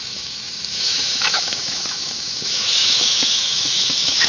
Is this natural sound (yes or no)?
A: no